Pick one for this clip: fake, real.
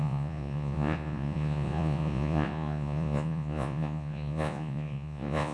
fake